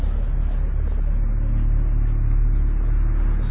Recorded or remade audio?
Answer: recorded